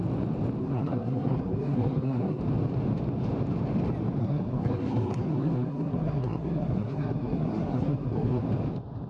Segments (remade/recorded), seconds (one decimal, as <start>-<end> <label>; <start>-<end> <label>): 0.0-0.6 recorded; 0.6-2.4 remade; 2.4-4.2 recorded; 4.2-8.4 remade; 8.4-9.1 recorded